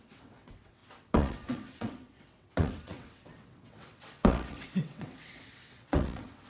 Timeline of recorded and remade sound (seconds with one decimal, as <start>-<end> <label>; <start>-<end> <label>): 0.0-6.5 remade